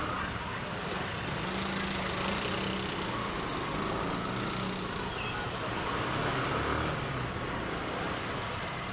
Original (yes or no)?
yes